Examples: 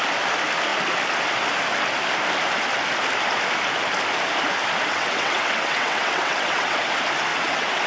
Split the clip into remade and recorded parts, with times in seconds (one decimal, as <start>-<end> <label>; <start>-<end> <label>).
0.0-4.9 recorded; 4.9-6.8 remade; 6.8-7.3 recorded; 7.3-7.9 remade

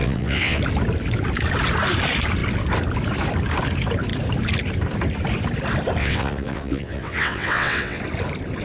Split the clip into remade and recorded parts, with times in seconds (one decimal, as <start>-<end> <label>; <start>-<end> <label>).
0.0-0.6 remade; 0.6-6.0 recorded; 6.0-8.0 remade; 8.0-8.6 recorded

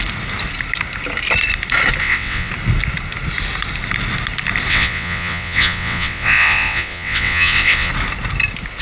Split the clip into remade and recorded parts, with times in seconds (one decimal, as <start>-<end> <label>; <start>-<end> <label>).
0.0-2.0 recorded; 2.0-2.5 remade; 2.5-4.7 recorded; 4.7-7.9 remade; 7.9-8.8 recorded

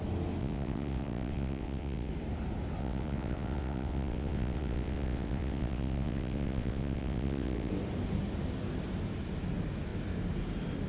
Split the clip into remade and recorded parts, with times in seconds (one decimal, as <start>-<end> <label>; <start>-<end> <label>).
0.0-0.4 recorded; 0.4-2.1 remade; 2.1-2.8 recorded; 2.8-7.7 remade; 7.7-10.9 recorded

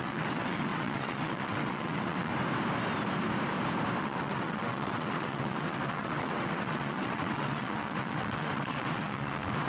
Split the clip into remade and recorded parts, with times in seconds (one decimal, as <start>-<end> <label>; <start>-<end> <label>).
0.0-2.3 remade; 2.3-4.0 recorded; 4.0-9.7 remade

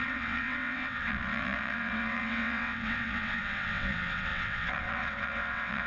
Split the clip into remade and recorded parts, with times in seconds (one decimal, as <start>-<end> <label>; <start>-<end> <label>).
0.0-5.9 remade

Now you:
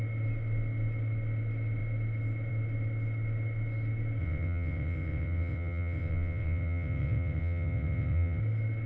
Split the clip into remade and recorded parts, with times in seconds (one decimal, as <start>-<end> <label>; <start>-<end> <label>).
0.0-4.2 recorded; 4.2-8.4 remade; 8.4-8.9 recorded